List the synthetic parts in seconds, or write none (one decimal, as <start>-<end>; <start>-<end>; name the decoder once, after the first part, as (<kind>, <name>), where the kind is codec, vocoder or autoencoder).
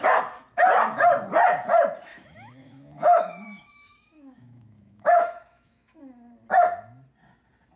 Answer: 2.1-6.0 (autoencoder, DAC-VAE)